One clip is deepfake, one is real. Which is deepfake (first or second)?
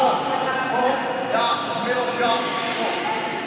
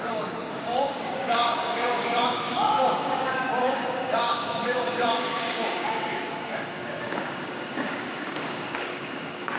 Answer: second